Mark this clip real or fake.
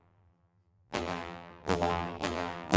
fake